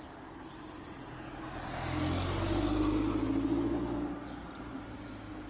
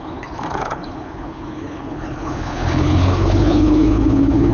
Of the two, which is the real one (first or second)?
first